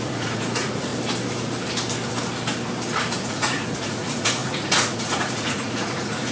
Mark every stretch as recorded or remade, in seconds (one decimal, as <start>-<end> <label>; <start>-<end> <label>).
0.0-0.9 remade; 0.9-3.2 recorded; 3.2-6.3 remade